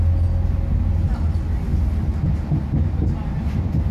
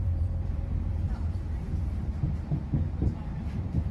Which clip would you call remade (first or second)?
second